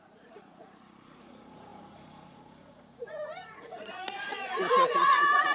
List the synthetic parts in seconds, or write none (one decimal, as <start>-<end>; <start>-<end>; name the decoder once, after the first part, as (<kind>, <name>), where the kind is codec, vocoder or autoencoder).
0.0-5.5 (vocoder, Vocos)